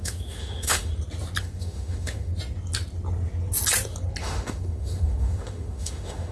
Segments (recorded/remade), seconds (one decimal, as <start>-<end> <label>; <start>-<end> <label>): 0.0-0.9 remade; 0.9-1.4 recorded; 1.4-2.3 remade; 2.3-4.2 recorded; 4.2-6.3 remade